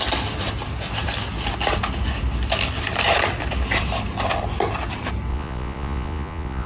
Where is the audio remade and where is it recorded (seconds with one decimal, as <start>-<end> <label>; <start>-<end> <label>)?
0.0-5.3 recorded; 5.3-6.7 remade